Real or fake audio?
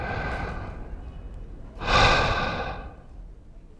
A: real